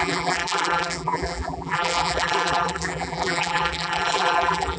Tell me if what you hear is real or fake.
fake